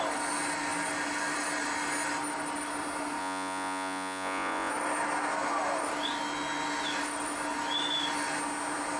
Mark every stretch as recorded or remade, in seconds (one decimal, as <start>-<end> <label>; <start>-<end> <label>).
0.0-3.2 recorded; 3.2-4.7 remade; 4.7-9.0 recorded